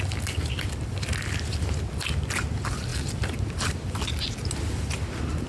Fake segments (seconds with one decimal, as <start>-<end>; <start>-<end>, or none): none